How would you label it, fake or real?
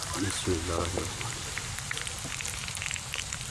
fake